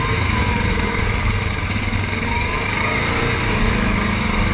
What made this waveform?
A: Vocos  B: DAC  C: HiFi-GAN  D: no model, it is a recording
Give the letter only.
B